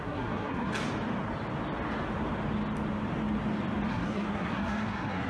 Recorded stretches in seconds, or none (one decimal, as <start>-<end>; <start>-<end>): 0.7-3.9